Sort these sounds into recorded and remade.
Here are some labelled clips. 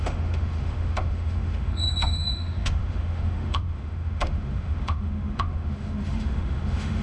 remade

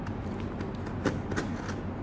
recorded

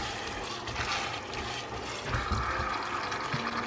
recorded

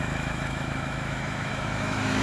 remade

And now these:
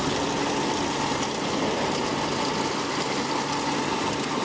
recorded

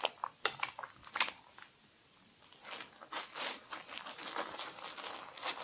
recorded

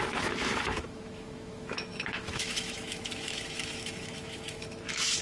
remade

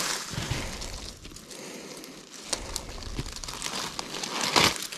recorded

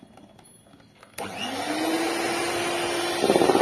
recorded